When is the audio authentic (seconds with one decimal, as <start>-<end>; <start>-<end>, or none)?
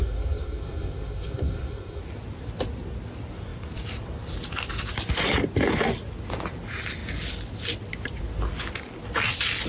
2.0-9.7